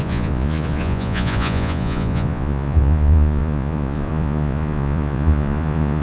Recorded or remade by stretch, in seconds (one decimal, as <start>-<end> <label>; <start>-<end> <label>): 0.0-6.0 remade